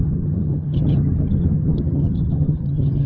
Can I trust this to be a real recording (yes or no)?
no